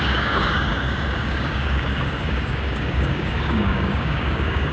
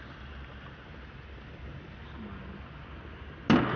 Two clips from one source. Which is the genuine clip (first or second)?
second